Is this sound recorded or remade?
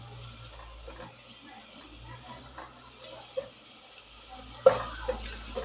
recorded